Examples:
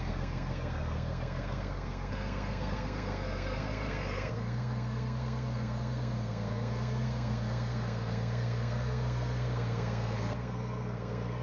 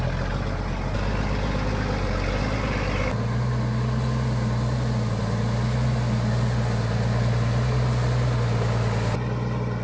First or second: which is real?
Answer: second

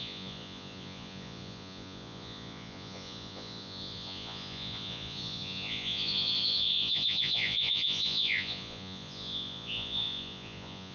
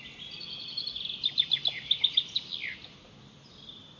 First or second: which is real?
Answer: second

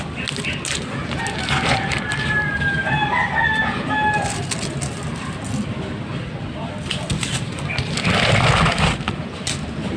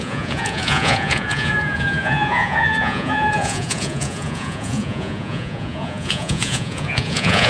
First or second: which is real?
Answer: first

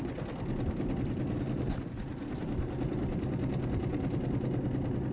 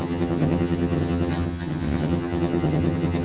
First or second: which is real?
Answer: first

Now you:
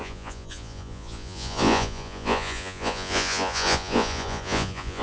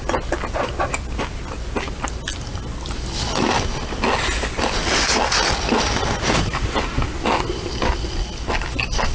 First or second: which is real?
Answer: second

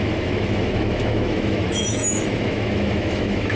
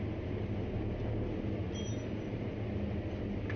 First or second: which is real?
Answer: second